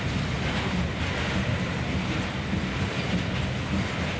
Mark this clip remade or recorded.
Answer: recorded